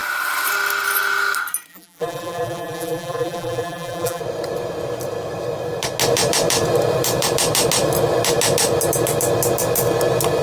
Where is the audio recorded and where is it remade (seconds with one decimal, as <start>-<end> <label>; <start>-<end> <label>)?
0.0-1.7 recorded; 1.7-4.2 remade; 4.2-10.4 recorded